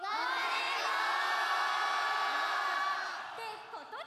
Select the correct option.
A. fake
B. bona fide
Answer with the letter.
B